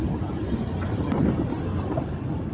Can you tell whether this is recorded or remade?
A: remade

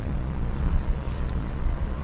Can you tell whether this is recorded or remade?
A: remade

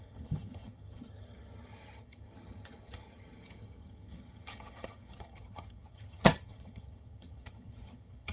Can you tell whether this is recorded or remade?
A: remade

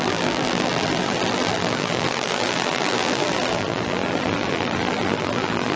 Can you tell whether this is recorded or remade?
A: remade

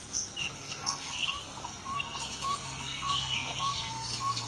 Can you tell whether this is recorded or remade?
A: remade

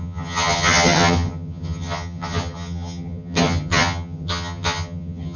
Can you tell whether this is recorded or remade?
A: remade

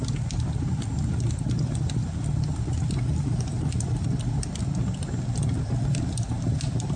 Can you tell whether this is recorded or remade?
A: recorded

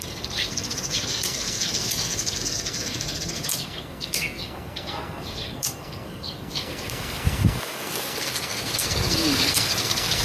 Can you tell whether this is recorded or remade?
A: remade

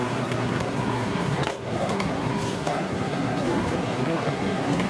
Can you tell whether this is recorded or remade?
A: remade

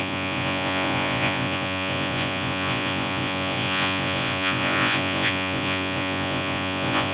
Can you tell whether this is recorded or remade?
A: remade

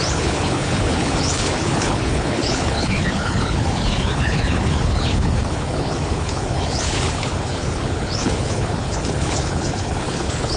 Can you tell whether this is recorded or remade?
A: remade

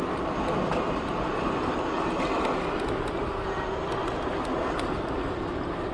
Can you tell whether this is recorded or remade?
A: recorded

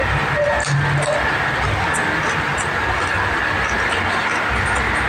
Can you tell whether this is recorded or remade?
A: recorded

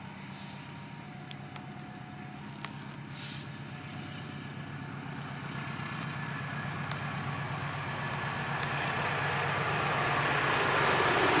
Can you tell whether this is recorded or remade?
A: recorded